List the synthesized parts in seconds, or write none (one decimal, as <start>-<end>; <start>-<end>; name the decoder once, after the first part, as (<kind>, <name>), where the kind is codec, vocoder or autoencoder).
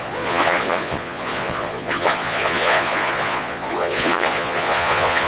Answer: 0.0-5.3 (vocoder, Vocos)